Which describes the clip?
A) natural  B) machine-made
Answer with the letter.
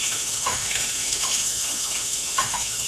B